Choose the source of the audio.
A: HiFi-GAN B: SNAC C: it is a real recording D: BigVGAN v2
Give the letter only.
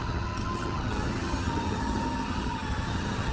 A